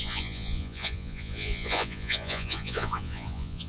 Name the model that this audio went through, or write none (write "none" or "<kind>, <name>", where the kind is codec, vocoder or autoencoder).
vocoder, Vocos